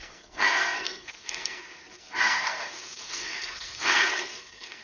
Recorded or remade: remade